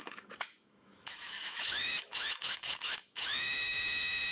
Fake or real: fake